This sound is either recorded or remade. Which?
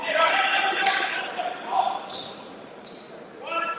recorded